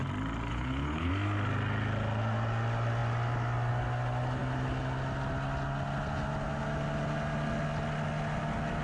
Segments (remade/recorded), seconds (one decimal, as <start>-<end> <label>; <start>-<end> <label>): 0.0-0.5 recorded; 0.5-1.1 remade; 1.1-8.8 recorded